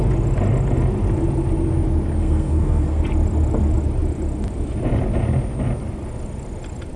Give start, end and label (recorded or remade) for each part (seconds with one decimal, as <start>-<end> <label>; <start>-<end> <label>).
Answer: 0.0-2.2 recorded; 2.2-3.0 remade; 3.0-7.0 recorded